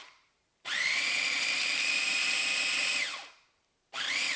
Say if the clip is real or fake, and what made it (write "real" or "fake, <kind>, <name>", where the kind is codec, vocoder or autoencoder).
fake, vocoder, BigVGAN v2